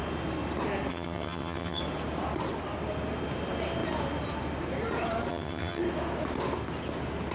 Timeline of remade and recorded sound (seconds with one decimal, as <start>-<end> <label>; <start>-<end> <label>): 0.0-0.9 recorded; 0.9-1.8 remade; 1.8-5.3 recorded; 5.3-5.8 remade; 5.8-7.3 recorded